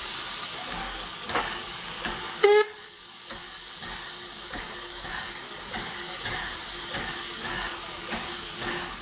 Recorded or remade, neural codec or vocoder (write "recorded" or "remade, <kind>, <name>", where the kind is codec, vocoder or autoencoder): remade, codec, DAC